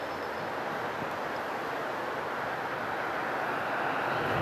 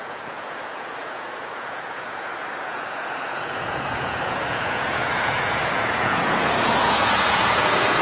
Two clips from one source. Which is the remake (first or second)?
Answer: second